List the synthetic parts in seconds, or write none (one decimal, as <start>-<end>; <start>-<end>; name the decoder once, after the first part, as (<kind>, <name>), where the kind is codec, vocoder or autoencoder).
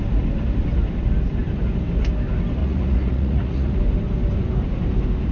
2.6-3.8 (vocoder, Vocos)